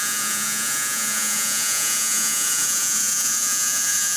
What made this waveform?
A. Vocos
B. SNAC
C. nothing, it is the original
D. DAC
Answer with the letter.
A